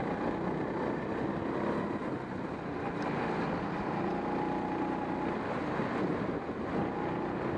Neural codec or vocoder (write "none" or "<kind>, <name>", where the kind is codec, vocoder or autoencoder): none